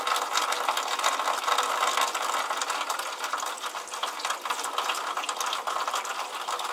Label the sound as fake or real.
real